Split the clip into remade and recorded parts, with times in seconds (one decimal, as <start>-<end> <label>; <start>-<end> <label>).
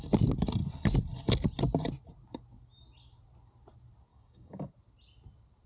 0.0-4.1 recorded; 4.1-4.7 remade; 4.7-5.7 recorded